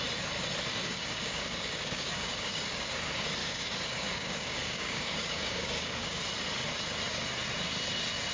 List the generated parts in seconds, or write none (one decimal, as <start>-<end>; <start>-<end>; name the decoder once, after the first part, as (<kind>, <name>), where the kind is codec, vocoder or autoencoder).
0.7-2.9 (codec, DAC); 3.4-6.2